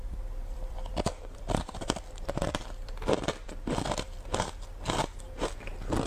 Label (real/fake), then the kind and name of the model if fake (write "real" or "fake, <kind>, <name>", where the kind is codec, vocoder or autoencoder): fake, vocoder, BigVGAN v2